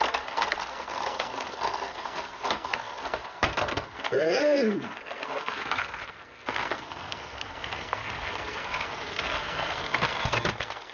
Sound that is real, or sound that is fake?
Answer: fake